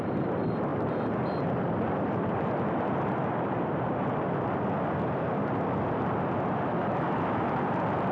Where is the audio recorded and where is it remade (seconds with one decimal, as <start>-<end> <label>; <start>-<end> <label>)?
0.0-3.2 recorded; 3.2-4.3 remade; 4.3-8.1 recorded